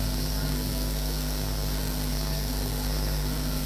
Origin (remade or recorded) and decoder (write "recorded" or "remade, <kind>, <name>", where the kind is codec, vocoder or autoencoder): remade, codec, SNAC